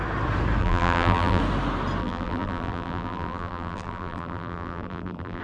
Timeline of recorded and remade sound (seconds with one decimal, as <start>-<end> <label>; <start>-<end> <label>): 0.0-0.6 recorded; 0.6-1.4 remade; 1.4-2.0 recorded; 2.0-5.4 remade